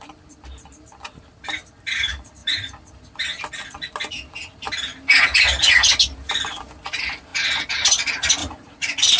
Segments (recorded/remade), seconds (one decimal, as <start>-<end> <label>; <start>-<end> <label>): 0.0-8.4 recorded; 8.4-9.2 remade